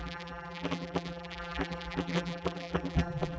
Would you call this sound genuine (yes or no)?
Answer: no